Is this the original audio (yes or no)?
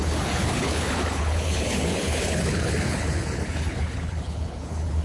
no